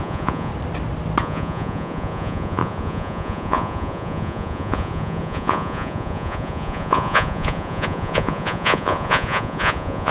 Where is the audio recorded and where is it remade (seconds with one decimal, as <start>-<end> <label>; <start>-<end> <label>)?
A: 0.0-0.5 remade; 0.5-1.2 recorded; 1.2-10.1 remade